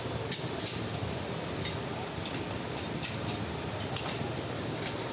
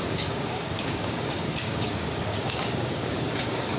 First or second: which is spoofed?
second